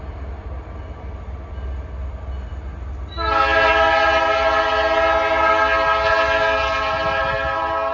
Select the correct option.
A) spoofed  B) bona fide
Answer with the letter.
B